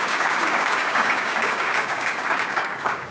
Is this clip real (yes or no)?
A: no